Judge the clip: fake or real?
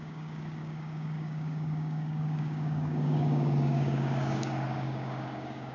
fake